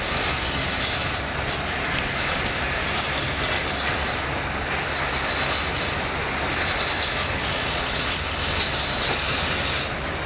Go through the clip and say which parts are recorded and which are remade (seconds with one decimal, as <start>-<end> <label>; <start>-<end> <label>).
0.0-7.4 recorded; 7.4-8.1 remade; 8.1-10.3 recorded